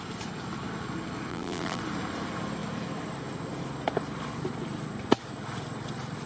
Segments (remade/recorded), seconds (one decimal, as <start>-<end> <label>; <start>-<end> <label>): 0.0-1.3 recorded; 1.3-1.8 remade; 1.8-6.3 recorded